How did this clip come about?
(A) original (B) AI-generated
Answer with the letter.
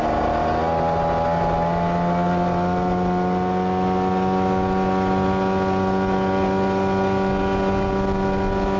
A